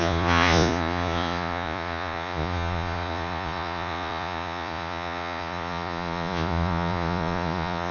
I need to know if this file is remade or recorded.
remade